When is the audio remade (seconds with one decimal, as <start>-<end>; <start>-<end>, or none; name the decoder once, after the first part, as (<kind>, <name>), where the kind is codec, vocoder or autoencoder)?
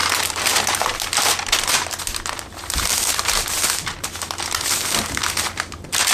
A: none